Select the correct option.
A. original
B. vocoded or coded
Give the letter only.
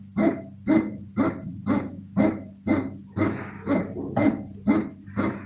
A